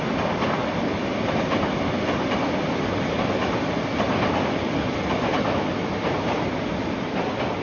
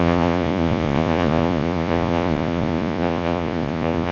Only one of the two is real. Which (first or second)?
first